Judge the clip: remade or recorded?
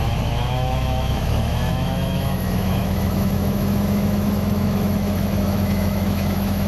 remade